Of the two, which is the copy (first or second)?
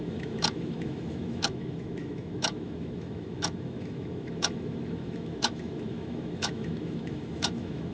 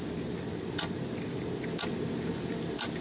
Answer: first